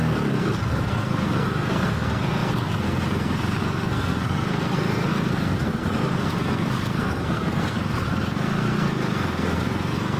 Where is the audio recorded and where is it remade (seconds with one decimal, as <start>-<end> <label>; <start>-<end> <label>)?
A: 0.0-10.2 remade